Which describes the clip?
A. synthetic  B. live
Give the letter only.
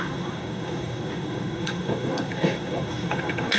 A